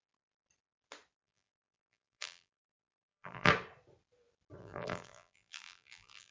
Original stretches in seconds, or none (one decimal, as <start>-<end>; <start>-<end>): 0.0-1.2; 3.5-4.6